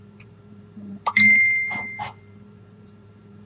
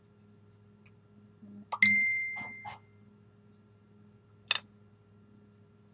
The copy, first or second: first